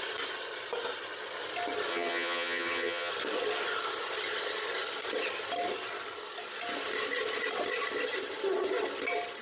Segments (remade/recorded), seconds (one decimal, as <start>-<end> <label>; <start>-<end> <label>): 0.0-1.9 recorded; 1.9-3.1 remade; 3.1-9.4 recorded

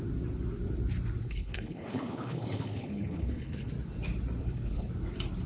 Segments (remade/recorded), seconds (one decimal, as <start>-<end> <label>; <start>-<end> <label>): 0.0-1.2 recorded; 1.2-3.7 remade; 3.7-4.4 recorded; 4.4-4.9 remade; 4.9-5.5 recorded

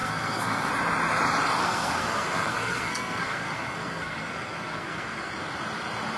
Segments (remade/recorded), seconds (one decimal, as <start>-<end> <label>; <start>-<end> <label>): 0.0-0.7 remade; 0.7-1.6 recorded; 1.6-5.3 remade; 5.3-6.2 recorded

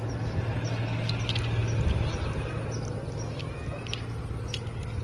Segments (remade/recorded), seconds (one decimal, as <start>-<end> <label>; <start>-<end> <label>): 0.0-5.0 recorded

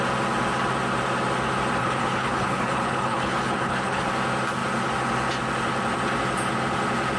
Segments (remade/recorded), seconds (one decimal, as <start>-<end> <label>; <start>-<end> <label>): 0.0-1.8 recorded; 1.8-4.1 remade; 4.1-7.2 recorded